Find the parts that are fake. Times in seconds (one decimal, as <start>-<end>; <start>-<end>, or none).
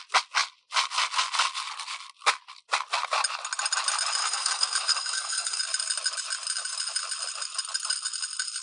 4.2-5.6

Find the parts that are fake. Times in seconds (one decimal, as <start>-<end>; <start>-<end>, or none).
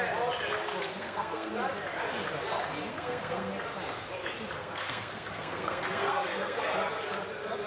0.9-1.5; 2.9-3.5; 4.6-6.6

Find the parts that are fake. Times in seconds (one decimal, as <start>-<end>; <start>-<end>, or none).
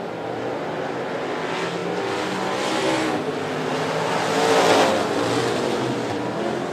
none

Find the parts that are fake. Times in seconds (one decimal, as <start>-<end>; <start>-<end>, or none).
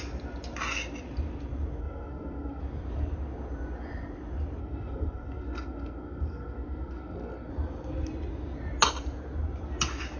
1.8-2.6; 4.6-7.5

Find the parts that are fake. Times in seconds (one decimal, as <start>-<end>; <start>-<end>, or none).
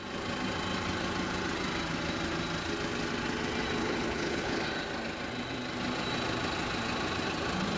3.8-4.6